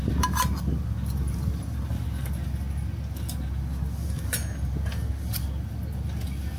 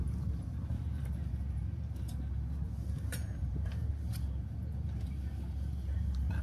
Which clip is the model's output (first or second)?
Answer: second